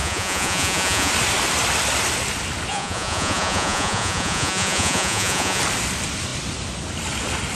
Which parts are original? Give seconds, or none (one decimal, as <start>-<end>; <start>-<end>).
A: 1.1-2.7; 5.6-7.6